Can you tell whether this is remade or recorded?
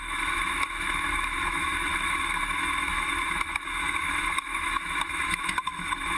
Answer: remade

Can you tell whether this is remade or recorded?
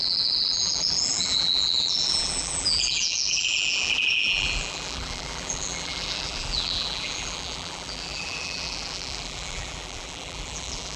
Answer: remade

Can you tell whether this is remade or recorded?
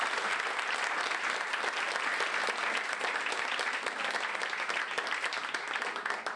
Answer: recorded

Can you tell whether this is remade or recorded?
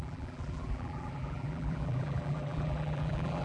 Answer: remade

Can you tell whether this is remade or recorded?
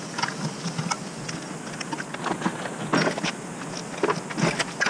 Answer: recorded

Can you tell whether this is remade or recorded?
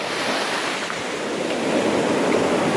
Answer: recorded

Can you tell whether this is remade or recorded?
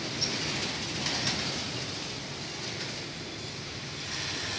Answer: recorded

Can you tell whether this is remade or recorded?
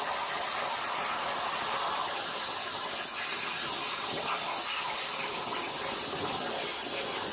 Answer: recorded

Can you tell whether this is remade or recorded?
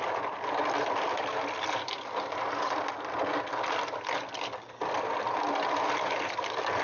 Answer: recorded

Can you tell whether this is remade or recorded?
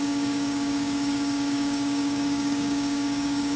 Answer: remade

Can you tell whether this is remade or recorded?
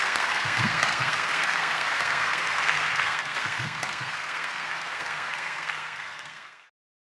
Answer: remade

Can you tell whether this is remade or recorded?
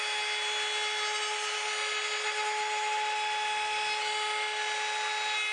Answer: recorded